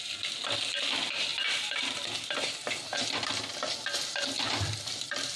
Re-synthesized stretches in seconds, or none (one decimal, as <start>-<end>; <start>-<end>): none